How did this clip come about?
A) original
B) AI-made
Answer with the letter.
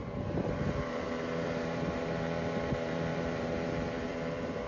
B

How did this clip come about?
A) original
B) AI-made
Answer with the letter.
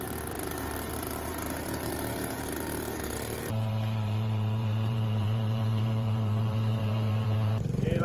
B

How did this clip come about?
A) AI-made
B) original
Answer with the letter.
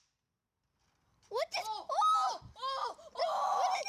B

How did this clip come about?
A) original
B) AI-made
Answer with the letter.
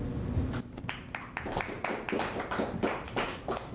A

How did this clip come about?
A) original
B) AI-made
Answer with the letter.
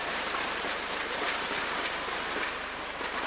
B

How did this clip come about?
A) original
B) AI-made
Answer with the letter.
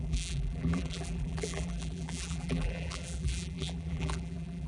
B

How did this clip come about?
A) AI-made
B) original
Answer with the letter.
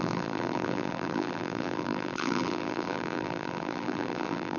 A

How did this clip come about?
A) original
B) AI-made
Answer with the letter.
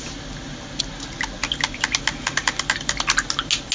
A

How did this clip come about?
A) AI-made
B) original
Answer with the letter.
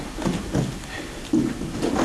B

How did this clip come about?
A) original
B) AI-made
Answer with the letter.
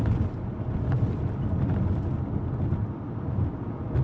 A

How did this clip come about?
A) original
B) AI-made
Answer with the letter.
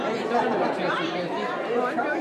A